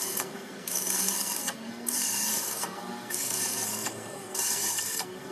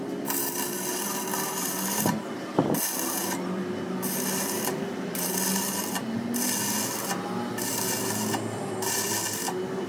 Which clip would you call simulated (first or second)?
first